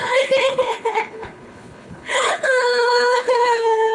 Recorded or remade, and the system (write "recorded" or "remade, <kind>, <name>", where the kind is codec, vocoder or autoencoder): remade, codec, HILCodec